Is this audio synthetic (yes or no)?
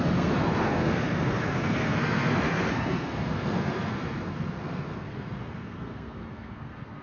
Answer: yes